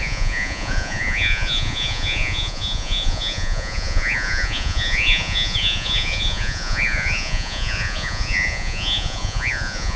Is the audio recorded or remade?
remade